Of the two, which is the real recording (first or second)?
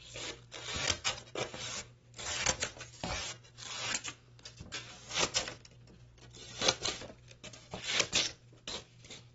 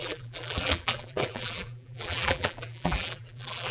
first